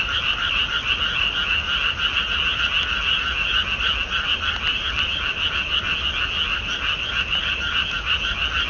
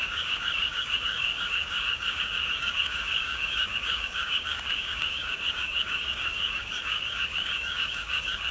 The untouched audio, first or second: first